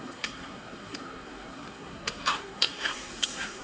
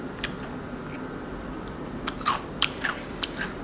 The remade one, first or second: first